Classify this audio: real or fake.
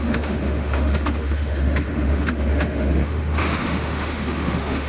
fake